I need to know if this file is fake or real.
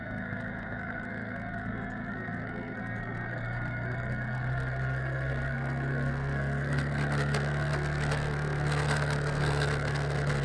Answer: fake